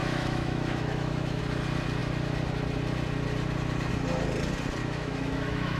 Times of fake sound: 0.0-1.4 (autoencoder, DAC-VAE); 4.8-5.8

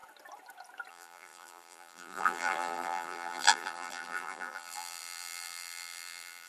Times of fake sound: 0.9-6.5 (vocoder, BigVGAN v2)

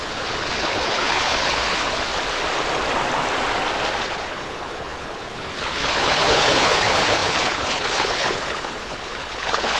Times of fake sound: 0.0-2.1 (codec, HILCodec); 4.0-9.8

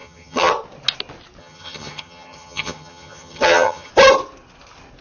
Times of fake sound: 0.0-0.5 (vocoder, HiFi-GAN); 1.4-3.9

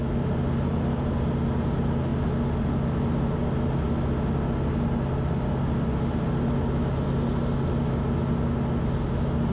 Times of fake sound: none

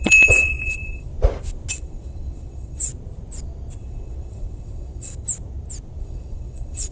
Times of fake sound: 0.0-1.1 (vocoder, WaveNeXt); 1.7-2.9; 3.8-5.1; 6.0-6.9